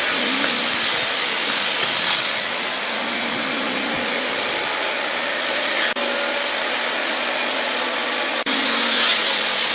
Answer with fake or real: real